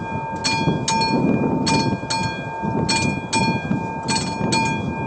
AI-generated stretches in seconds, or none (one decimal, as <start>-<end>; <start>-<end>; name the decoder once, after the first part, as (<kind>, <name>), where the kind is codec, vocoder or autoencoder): none